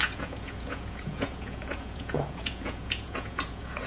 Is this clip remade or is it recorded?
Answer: remade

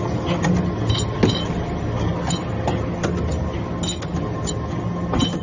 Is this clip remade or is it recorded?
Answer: recorded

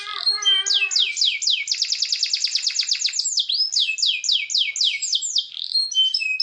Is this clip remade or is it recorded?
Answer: recorded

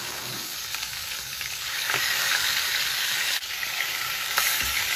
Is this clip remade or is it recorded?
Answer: remade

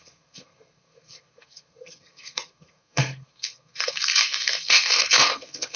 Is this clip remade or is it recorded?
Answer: remade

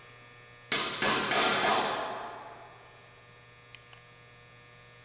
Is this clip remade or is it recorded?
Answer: recorded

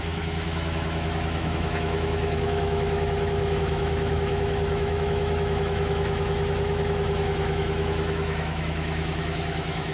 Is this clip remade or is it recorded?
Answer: remade